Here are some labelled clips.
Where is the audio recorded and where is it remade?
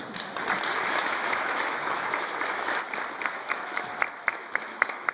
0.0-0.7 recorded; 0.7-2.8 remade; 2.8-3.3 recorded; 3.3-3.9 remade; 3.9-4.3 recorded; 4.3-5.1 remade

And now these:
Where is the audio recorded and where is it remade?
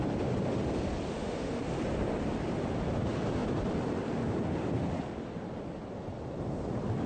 0.0-1.1 recorded; 1.1-1.6 remade; 1.6-7.1 recorded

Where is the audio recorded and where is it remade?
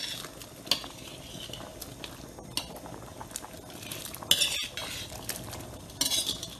0.0-6.6 recorded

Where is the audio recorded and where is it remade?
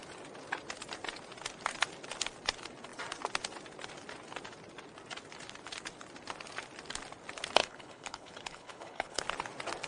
0.0-7.6 recorded; 7.6-9.2 remade; 9.2-9.9 recorded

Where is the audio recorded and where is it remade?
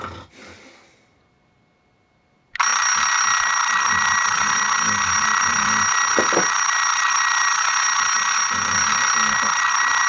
0.0-10.1 recorded